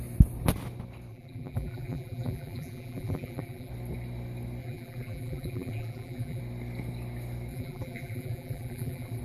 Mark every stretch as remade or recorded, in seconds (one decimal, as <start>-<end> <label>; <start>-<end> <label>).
0.0-1.1 recorded; 1.1-3.7 remade; 3.7-4.6 recorded; 4.6-6.4 remade; 6.4-7.5 recorded; 7.5-9.2 remade